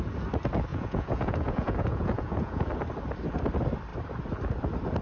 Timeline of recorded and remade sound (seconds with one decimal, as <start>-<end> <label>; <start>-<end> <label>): 0.0-0.7 recorded; 0.7-2.7 remade; 2.7-5.0 recorded